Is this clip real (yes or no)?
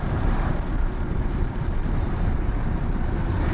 no